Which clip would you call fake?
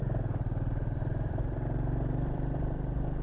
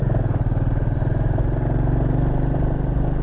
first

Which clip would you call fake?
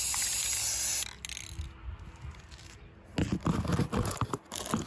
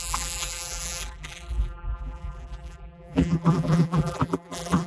second